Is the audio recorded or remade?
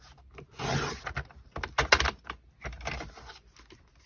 recorded